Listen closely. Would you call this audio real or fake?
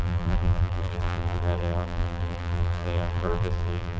fake